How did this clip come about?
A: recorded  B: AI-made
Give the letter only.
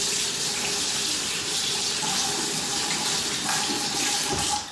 A